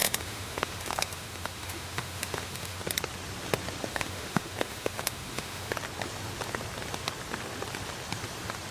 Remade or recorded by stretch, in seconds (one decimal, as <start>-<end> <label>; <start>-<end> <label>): 0.0-2.8 remade; 2.8-3.9 recorded; 3.9-5.7 remade; 5.7-8.7 recorded